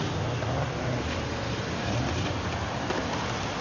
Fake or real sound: real